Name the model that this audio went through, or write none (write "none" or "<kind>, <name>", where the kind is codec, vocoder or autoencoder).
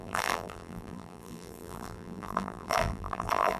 vocoder, BigVGAN v2